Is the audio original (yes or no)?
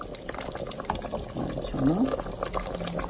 yes